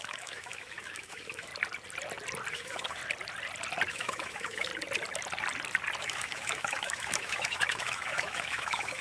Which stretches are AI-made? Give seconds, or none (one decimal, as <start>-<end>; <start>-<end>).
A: 0.0-1.5; 2.5-3.0; 3.9-4.7; 6.0-9.0